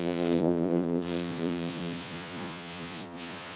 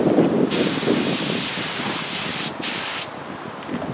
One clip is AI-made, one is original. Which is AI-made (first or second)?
first